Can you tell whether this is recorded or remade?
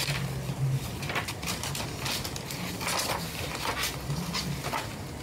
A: recorded